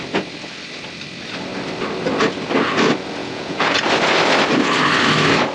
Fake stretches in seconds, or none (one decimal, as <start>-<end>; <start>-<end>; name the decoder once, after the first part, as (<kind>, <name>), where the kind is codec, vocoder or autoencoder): 3.2-3.8 (vocoder, Vocos)